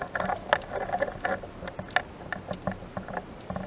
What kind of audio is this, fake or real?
real